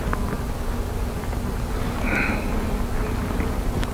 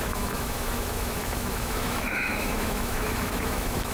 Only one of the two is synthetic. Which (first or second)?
second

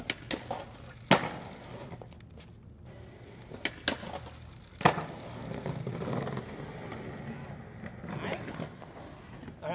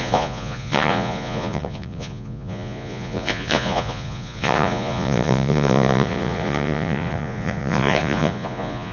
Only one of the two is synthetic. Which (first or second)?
second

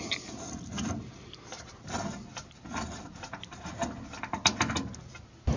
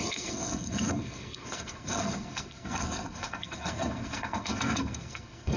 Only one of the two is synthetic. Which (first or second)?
second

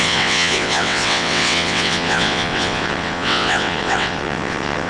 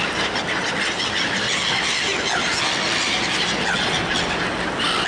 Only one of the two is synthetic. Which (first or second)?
first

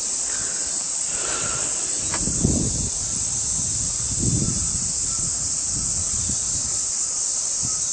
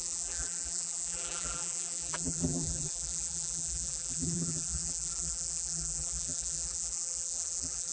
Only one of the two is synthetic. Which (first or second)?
second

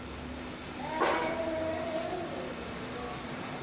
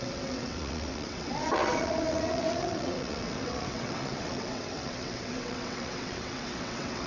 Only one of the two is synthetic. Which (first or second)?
second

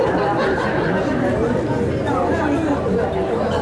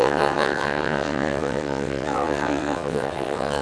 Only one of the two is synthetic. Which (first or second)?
second